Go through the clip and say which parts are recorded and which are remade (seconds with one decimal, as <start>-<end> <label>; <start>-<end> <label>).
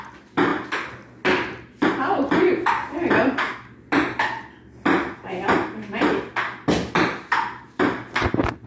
0.0-8.7 recorded